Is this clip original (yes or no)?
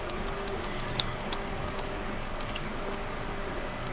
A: no